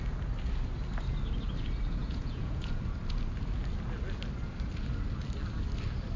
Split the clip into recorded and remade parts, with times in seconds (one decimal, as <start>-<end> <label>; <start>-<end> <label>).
0.0-2.0 recorded; 2.0-2.8 remade; 2.8-6.2 recorded